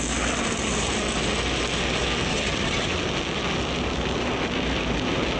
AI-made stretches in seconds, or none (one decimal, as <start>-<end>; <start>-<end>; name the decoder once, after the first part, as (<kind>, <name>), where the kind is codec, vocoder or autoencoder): 2.3-2.9 (vocoder, HiFi-GAN)